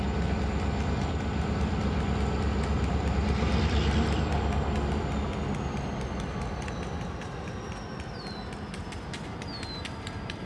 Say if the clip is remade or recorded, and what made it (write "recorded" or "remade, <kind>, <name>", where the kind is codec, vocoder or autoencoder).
recorded